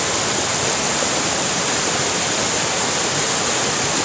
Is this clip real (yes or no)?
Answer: yes